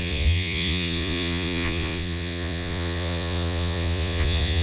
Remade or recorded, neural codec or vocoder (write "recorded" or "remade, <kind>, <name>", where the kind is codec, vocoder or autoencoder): remade, vocoder, Vocos